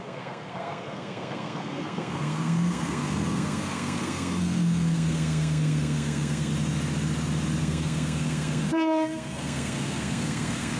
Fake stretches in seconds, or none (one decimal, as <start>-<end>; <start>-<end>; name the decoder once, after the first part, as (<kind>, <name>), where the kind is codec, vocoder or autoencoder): 0.0-6.5 (codec, SNAC); 7.6-10.8